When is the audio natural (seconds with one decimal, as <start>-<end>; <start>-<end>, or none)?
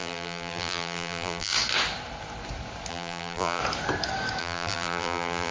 1.5-2.9; 3.6-4.4